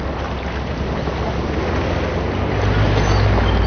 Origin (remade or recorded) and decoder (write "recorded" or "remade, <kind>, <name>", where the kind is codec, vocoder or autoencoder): recorded